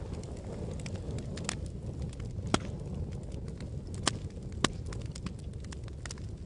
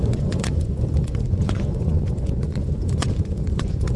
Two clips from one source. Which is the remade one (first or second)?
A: second